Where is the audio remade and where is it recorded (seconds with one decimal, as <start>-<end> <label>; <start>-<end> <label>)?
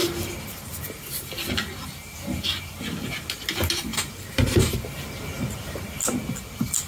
0.0-3.9 recorded; 3.9-5.9 remade; 5.9-6.9 recorded